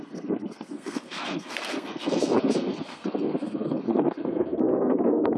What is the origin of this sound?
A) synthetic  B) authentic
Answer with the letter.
A